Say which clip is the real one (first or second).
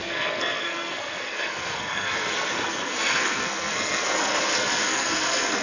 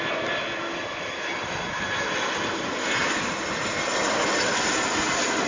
second